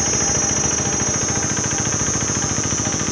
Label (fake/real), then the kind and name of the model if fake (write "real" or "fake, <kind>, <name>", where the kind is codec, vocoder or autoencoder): real